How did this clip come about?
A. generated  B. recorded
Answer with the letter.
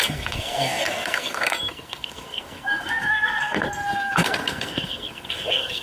A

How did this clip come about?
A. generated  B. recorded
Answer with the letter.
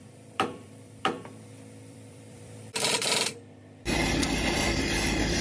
A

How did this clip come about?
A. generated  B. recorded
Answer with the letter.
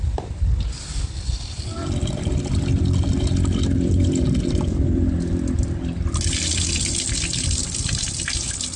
B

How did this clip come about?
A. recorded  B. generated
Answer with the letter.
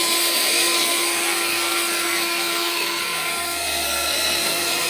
B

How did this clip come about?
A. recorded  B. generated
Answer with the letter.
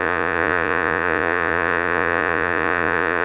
B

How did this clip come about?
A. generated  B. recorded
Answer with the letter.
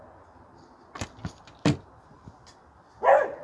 B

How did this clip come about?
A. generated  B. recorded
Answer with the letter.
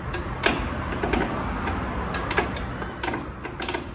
B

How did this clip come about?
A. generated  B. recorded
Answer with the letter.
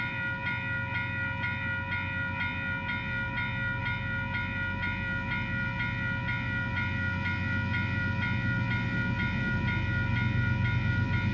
B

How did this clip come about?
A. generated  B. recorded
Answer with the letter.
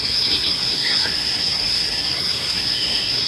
A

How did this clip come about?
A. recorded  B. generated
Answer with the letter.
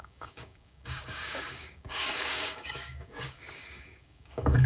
B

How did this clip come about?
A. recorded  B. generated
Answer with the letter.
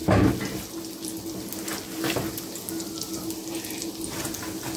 A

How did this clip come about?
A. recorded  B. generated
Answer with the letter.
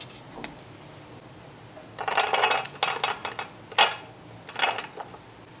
A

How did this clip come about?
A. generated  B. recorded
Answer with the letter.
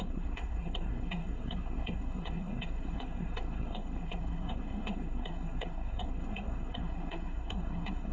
A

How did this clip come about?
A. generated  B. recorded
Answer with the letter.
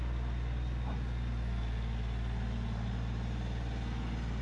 B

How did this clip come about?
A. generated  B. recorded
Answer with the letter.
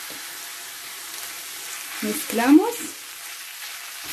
B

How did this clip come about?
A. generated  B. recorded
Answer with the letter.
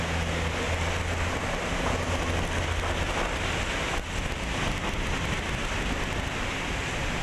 B